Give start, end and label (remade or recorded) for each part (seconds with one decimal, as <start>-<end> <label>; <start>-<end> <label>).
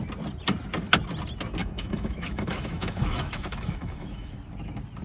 0.0-1.6 recorded; 1.6-4.3 remade; 4.3-5.0 recorded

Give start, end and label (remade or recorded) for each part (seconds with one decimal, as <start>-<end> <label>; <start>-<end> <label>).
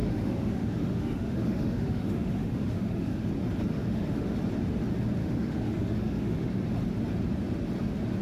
0.0-3.3 remade; 3.3-3.7 recorded; 3.7-4.4 remade; 4.4-5.2 recorded; 5.2-6.5 remade; 6.5-8.2 recorded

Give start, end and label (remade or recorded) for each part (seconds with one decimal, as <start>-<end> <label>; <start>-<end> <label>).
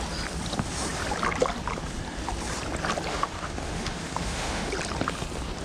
0.0-3.1 recorded; 3.1-4.7 remade; 4.7-5.6 recorded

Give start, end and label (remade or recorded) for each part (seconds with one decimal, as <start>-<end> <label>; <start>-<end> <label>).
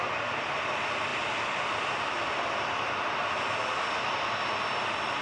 0.0-5.2 recorded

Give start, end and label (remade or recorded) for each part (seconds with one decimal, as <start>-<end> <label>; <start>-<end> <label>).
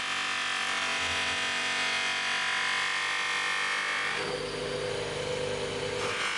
0.0-6.4 recorded